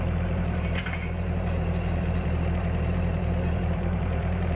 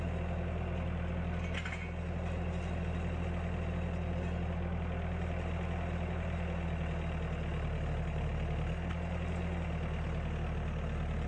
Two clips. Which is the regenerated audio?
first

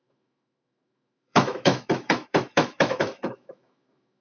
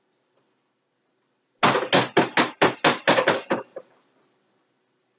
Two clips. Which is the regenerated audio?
first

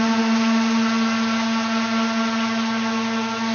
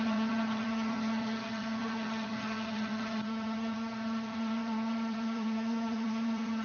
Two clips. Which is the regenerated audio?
second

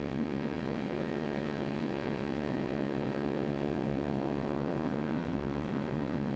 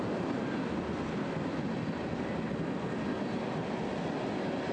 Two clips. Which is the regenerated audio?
first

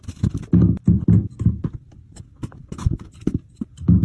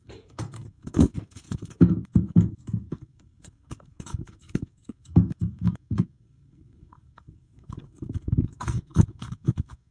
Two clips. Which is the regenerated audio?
second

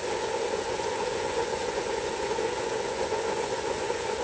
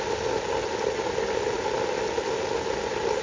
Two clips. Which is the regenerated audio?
first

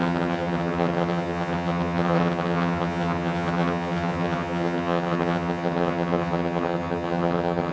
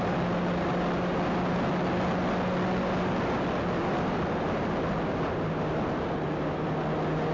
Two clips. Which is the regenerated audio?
first